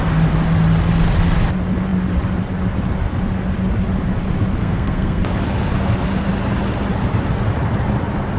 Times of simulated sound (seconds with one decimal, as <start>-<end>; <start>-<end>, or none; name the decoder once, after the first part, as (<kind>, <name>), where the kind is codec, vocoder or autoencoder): 4.6-5.2 (codec, SNAC)